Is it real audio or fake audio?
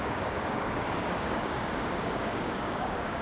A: fake